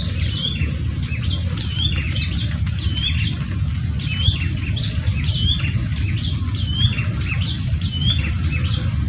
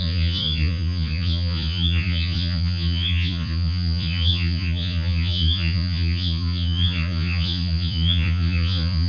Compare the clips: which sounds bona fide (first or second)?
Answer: first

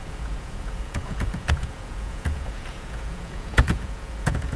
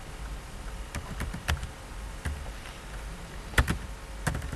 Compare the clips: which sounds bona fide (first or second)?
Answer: second